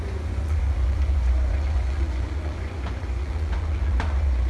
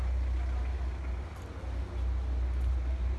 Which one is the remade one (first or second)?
first